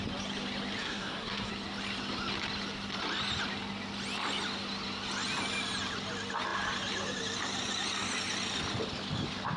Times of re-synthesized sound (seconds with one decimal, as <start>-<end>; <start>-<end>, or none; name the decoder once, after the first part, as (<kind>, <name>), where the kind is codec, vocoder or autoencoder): 0.8-1.5 (codec, SNAC)